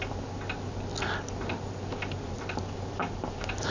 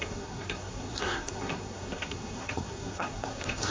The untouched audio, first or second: first